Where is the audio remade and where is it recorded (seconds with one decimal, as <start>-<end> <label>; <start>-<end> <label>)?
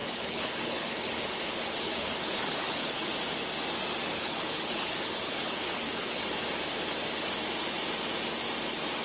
0.0-3.1 remade; 3.1-4.0 recorded; 4.0-6.2 remade; 6.2-9.0 recorded